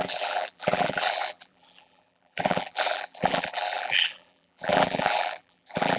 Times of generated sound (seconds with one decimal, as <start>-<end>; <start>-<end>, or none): 0.0-6.0